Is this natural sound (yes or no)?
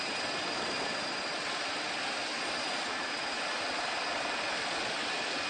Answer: yes